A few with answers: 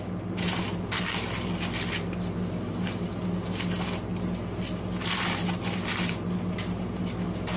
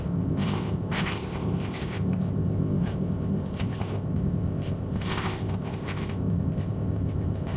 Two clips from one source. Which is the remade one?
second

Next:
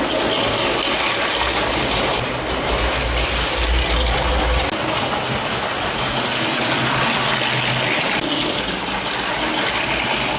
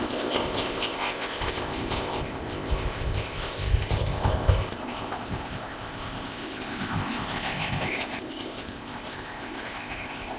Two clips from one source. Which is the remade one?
second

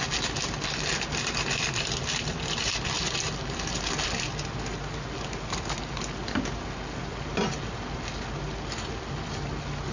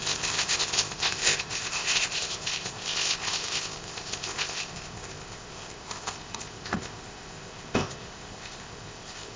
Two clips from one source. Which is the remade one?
second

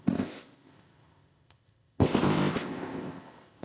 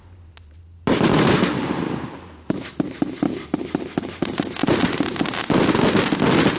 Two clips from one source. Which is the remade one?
first